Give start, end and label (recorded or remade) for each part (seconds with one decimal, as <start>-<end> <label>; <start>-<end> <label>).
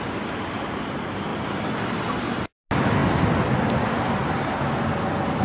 0.0-1.3 recorded; 1.3-2.1 remade; 2.1-5.4 recorded